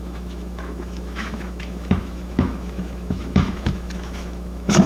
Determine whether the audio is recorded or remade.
remade